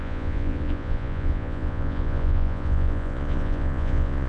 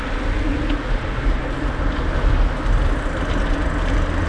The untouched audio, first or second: second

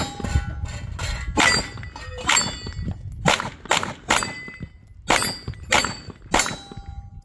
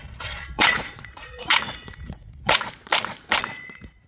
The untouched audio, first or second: first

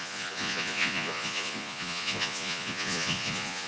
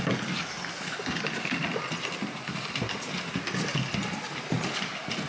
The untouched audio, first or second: second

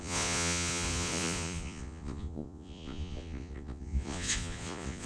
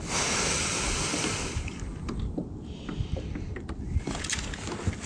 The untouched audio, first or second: second